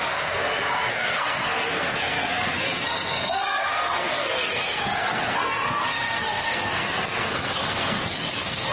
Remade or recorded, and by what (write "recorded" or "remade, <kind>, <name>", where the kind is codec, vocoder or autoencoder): remade, codec, SNAC